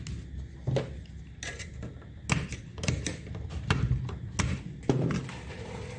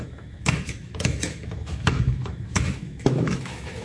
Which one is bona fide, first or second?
first